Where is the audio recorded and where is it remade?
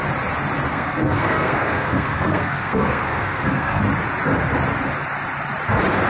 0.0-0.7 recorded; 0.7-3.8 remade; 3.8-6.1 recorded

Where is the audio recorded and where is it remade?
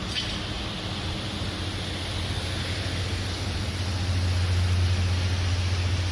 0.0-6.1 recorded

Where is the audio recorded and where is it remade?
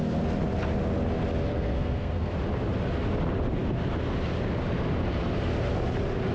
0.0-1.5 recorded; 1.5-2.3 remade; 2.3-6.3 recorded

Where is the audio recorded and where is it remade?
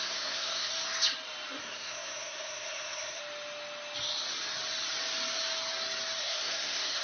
0.0-0.7 remade; 0.7-1.6 recorded; 1.6-3.2 remade; 3.2-6.2 recorded; 6.2-7.0 remade